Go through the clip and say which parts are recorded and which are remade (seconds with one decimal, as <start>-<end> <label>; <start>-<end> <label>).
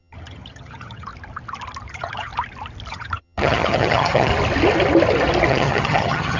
0.0-1.1 remade; 1.1-1.9 recorded; 1.9-2.3 remade; 2.3-2.9 recorded; 2.9-4.3 remade; 4.3-5.5 recorded; 5.5-6.4 remade